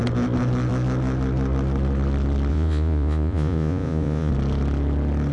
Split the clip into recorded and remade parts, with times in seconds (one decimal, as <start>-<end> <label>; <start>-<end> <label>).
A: 0.0-2.5 recorded; 2.5-4.3 remade; 4.3-5.3 recorded